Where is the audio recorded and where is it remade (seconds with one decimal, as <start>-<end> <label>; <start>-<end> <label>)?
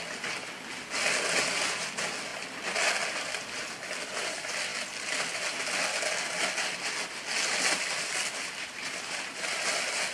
0.0-10.1 recorded